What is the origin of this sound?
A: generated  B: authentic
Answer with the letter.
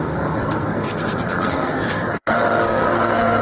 A